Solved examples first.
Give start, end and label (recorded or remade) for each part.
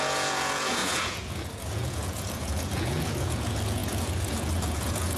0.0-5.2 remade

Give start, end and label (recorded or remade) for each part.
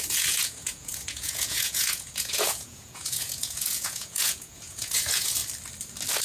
0.0-5.4 remade; 5.4-6.2 recorded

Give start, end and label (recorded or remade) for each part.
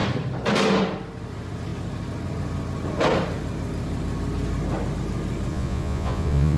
0.0-5.5 recorded; 5.5-6.6 remade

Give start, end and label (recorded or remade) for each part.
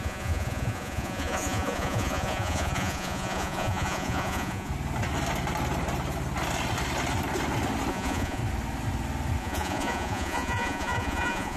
0.0-4.7 remade; 4.7-7.9 recorded; 7.9-8.4 remade; 8.4-9.4 recorded; 9.4-11.6 remade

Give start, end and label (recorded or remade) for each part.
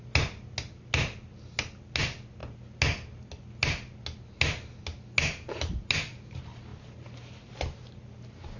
0.0-8.6 recorded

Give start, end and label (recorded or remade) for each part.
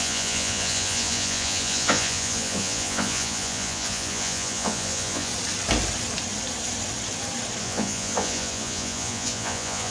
0.0-5.3 remade; 5.3-7.6 recorded; 7.6-9.9 remade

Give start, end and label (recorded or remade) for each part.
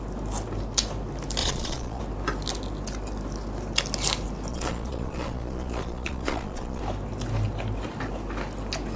0.0-1.4 recorded; 1.4-2.0 remade; 2.0-4.5 recorded; 4.5-6.8 remade; 6.8-9.0 recorded